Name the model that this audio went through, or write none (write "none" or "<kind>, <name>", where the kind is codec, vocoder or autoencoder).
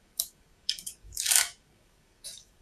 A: codec, DAC